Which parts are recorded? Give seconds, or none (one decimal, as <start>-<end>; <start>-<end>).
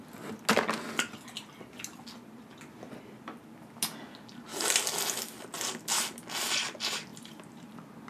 0.0-7.1